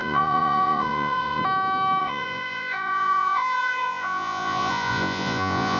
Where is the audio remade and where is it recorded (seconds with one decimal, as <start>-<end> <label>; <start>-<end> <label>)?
0.0-1.4 remade; 1.4-2.0 recorded; 2.0-5.8 remade